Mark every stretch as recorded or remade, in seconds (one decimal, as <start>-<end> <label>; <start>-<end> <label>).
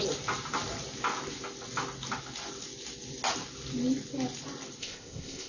0.0-4.8 recorded; 4.8-5.5 remade